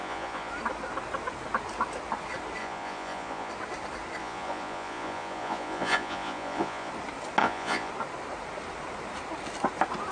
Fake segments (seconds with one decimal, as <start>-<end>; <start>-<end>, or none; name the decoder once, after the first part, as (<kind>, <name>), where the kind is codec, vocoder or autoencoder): 0.0-0.5 (vocoder, Vocos); 2.6-3.5; 4.2-6.9; 7.4-7.9